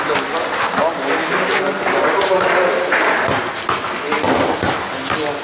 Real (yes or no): yes